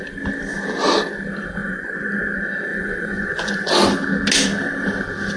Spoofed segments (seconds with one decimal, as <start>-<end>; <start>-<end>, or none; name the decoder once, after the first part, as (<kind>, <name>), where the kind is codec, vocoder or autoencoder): 1.6-2.2 (vocoder, Vocos); 2.7-3.7